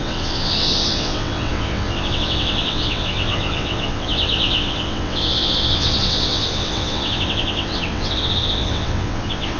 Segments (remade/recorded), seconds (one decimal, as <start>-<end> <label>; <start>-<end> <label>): 0.0-9.6 remade